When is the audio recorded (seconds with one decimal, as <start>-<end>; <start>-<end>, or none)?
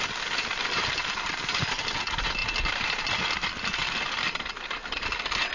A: 0.0-5.5